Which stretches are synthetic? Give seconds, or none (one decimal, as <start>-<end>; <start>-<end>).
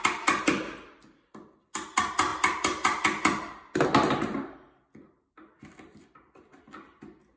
none